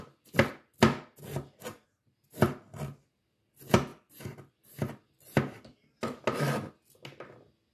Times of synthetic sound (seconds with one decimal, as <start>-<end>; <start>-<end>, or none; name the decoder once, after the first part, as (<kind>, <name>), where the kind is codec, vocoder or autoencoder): none